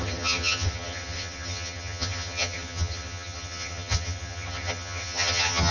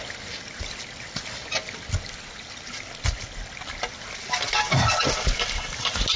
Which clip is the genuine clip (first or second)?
second